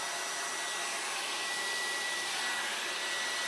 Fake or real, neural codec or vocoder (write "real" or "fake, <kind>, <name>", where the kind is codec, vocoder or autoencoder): real